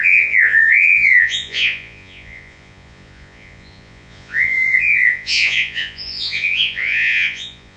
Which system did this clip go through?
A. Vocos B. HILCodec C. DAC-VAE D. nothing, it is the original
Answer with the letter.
A